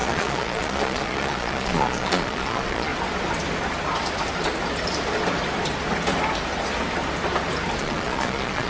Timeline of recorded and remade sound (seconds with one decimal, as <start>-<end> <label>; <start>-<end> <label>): 0.0-2.9 remade; 2.9-7.8 recorded; 7.8-8.7 remade